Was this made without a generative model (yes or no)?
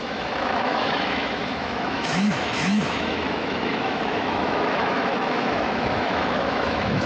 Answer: no